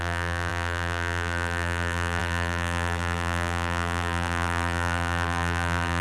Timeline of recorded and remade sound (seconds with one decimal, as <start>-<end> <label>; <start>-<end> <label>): 0.0-6.0 remade